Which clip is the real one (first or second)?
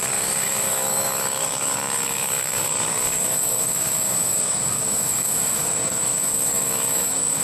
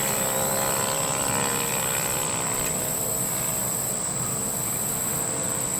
second